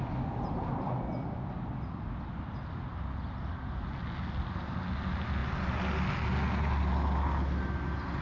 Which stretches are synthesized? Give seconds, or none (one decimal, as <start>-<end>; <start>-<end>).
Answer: none